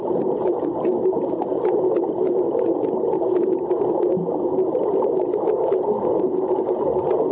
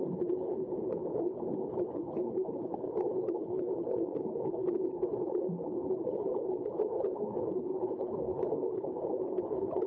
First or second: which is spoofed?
second